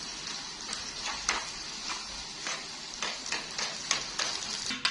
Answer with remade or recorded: recorded